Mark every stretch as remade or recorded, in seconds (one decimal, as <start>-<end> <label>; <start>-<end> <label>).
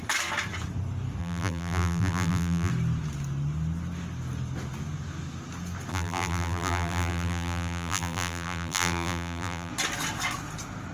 0.0-1.2 recorded; 1.2-2.7 remade; 2.7-5.9 recorded; 5.9-9.7 remade; 9.7-10.9 recorded